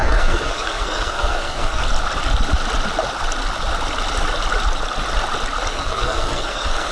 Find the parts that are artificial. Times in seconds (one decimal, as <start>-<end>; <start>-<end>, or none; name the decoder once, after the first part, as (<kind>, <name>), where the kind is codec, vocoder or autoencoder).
0.0-1.8 (codec, SNAC); 5.7-6.9